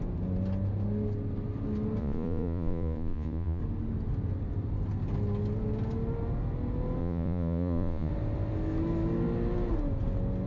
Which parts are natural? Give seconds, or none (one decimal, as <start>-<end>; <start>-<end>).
0.0-2.0; 3.6-7.0; 8.1-10.5